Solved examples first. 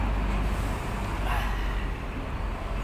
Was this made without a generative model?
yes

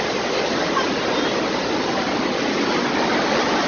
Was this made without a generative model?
yes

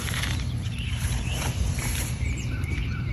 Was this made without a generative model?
no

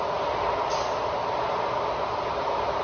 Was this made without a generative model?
yes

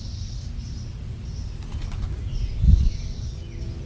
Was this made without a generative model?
yes